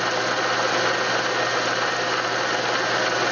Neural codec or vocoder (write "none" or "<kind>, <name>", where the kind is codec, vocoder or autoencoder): none